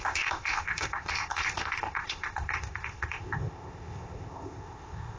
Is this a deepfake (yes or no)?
yes